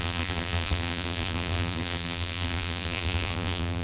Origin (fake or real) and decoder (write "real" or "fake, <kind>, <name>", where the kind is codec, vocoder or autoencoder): fake, vocoder, BigVGAN v2